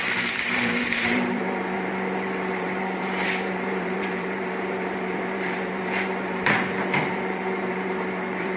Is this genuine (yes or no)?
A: no